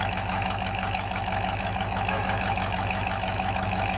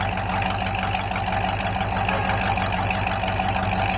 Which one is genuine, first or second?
second